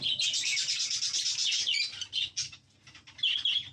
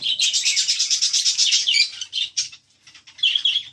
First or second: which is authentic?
first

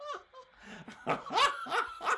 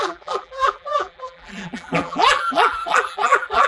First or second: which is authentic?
first